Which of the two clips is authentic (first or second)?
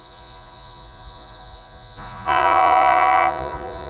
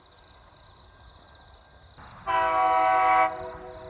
second